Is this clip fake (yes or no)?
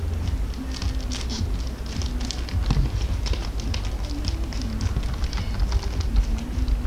no